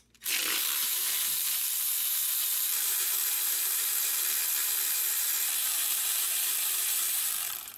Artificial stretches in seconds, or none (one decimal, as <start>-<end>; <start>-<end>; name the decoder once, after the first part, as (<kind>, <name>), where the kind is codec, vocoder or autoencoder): 0.4-4.0 (vocoder, BigVGAN v2); 5.6-7.8